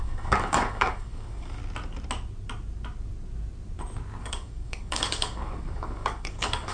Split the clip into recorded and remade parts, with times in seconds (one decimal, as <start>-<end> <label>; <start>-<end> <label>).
0.0-1.6 remade; 1.6-4.2 recorded; 4.2-6.7 remade